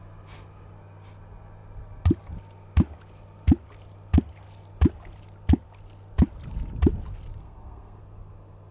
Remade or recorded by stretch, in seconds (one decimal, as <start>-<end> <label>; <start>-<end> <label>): 0.0-7.4 recorded; 7.4-8.0 remade; 8.0-8.7 recorded